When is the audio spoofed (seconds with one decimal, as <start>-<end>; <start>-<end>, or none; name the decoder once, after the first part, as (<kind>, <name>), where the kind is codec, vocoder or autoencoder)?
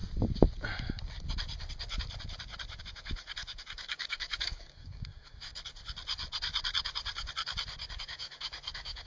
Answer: 2.8-5.5 (autoencoder, DAC-VAE); 8.0-9.1